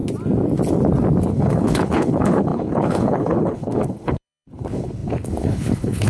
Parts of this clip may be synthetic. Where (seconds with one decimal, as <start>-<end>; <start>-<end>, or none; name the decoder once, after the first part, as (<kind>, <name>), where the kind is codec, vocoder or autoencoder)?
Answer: 1.3-6.1 (codec, HILCodec)